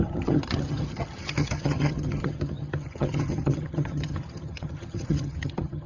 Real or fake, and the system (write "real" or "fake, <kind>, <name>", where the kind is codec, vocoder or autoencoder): fake, vocoder, HiFi-GAN